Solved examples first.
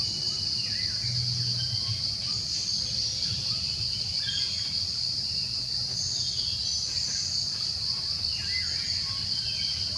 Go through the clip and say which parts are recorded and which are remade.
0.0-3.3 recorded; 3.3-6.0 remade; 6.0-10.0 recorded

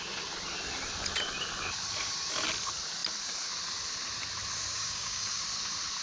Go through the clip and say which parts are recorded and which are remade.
0.0-4.7 recorded; 4.7-5.4 remade; 5.4-6.0 recorded